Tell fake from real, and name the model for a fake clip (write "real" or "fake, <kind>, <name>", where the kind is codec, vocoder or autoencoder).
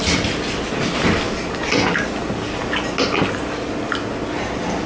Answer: real